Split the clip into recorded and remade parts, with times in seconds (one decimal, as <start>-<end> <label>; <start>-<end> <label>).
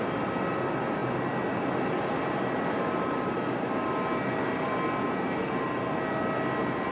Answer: 0.0-6.9 recorded